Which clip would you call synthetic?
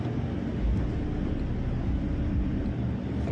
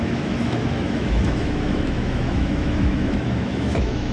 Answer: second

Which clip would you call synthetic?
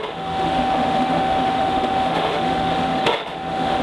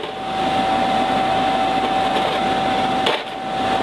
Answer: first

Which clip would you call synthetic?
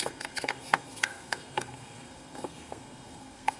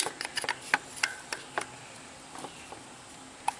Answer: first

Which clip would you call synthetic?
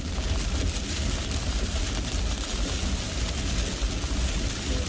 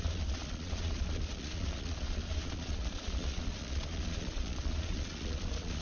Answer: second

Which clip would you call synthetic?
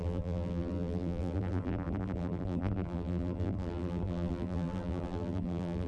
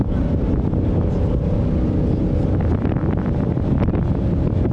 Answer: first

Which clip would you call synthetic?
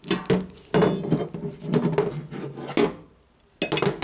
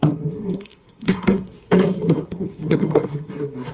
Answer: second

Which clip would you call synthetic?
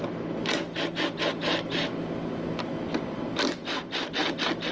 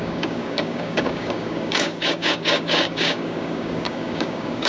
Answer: second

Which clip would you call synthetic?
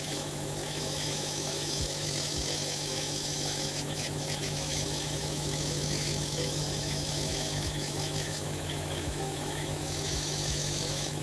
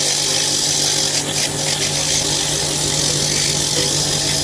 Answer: first